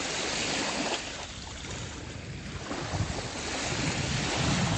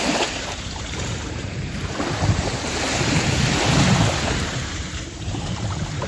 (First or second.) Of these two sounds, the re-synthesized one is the second